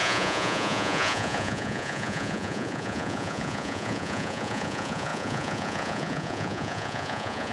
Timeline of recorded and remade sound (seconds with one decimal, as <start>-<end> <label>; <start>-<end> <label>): 0.0-7.5 remade